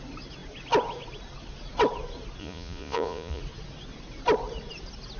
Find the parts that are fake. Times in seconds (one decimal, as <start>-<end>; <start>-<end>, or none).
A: 2.4-3.4